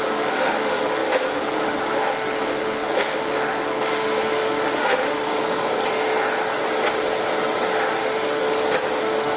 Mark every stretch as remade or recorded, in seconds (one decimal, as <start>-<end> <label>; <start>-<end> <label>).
0.0-5.3 remade; 5.3-7.9 recorded; 7.9-8.4 remade; 8.4-9.0 recorded; 9.0-9.4 remade